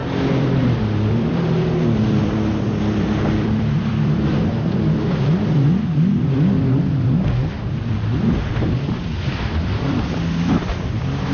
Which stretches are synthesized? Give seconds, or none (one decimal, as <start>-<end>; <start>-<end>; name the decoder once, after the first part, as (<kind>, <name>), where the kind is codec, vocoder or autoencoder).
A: 0.0-11.3 (vocoder, BigVGAN v2)